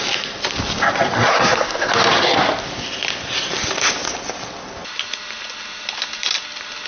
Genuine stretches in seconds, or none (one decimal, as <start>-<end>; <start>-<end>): 0.0-1.3; 1.9-6.9